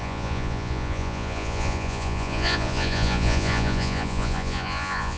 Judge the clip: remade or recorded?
remade